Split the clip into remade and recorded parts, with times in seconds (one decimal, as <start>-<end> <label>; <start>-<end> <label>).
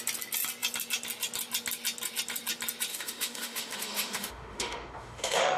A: 0.0-2.9 recorded; 2.9-5.6 remade